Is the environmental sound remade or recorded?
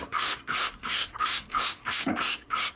remade